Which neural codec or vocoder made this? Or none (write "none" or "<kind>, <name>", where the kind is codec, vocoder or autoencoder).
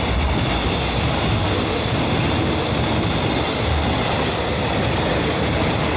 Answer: none